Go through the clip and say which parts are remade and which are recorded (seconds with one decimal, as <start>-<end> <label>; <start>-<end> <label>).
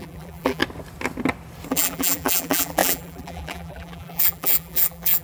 0.0-0.6 remade; 0.6-1.7 recorded; 1.7-5.2 remade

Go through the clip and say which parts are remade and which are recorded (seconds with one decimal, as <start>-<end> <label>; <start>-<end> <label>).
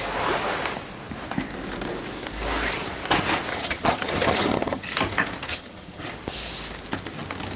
0.0-3.5 recorded; 3.5-4.8 remade; 4.8-5.5 recorded; 5.5-6.1 remade; 6.1-7.6 recorded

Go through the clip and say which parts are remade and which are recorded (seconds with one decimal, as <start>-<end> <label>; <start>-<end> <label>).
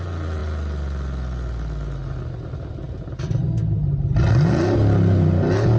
0.0-5.8 recorded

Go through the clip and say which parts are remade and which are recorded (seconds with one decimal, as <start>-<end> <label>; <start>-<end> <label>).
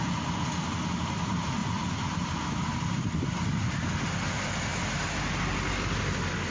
0.0-6.5 recorded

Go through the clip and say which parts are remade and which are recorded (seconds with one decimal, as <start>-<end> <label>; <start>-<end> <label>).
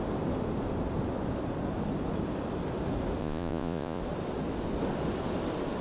0.0-3.2 recorded; 3.2-4.0 remade; 4.0-5.8 recorded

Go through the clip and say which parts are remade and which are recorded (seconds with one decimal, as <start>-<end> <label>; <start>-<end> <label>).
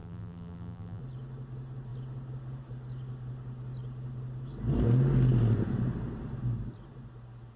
0.0-1.0 remade; 1.0-7.6 recorded